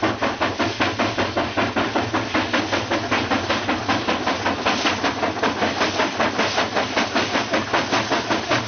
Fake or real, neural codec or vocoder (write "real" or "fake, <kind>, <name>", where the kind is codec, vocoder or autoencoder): real